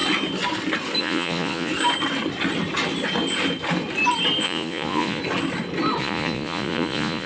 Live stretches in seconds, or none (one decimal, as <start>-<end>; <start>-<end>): 0.0-1.0; 1.7-4.4; 5.2-6.0